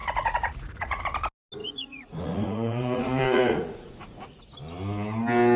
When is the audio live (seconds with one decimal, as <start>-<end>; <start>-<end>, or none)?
1.0-1.6; 4.4-5.6